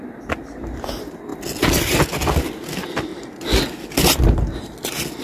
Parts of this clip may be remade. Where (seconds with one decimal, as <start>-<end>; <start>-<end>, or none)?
none